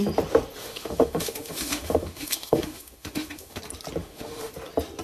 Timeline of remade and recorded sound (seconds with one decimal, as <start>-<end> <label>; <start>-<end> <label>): 0.0-0.6 recorded; 0.6-3.6 remade; 3.6-4.0 recorded; 4.0-4.5 remade; 4.5-5.0 recorded